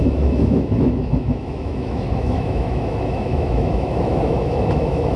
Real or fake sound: fake